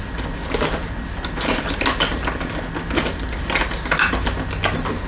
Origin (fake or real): real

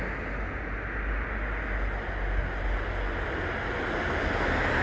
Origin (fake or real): real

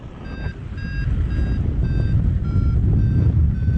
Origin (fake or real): real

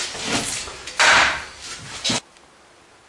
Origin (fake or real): real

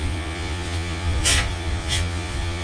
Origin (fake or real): fake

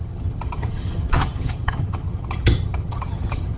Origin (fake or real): fake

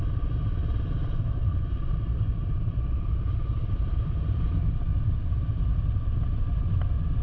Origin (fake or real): real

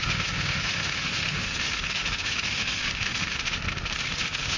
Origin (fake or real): fake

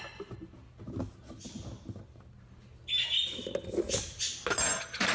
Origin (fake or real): real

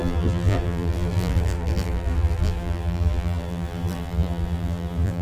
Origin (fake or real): fake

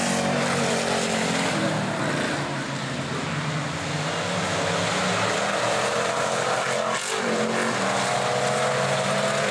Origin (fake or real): real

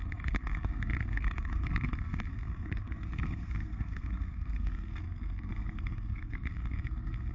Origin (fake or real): fake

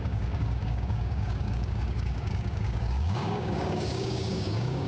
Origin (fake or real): fake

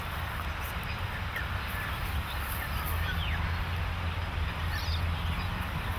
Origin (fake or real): real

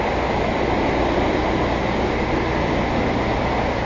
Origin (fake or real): real